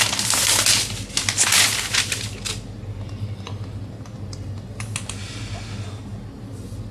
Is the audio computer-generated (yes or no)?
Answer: no